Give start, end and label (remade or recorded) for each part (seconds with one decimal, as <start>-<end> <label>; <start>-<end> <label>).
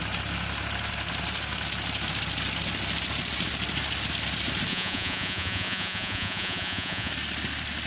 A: 0.0-4.7 recorded; 4.7-7.1 remade; 7.1-7.9 recorded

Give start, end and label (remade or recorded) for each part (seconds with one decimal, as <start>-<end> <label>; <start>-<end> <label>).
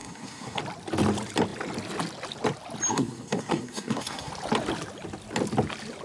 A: 0.0-0.6 remade; 0.6-2.9 recorded; 2.9-4.3 remade; 4.3-6.0 recorded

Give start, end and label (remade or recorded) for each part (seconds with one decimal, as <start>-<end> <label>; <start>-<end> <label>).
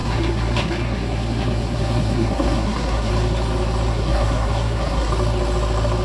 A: 0.0-3.1 remade; 3.1-3.9 recorded; 3.9-5.1 remade; 5.1-6.0 recorded